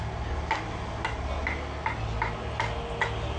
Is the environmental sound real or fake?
real